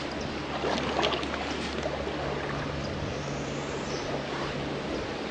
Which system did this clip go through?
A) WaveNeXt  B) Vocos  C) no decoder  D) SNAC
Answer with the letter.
C